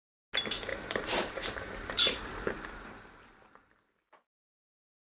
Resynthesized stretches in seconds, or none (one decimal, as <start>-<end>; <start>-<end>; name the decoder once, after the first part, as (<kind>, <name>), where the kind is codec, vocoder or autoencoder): 0.7-2.9 (vocoder, BigVGAN v2)